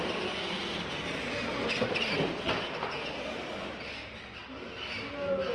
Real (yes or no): yes